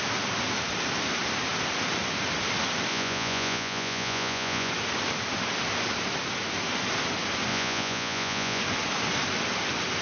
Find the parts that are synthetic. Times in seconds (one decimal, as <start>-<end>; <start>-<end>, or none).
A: 2.9-4.7; 7.5-8.6